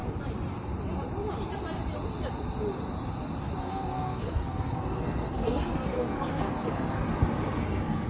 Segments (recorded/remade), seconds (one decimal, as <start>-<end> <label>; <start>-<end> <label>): 0.0-3.6 recorded; 3.6-7.1 remade; 7.1-7.6 recorded; 7.6-8.1 remade